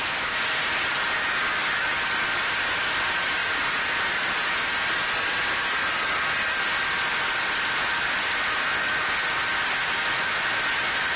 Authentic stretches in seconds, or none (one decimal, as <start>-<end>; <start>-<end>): none